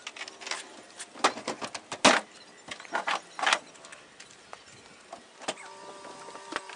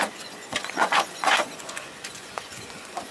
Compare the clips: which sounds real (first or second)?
first